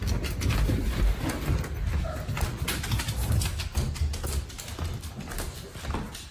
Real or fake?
real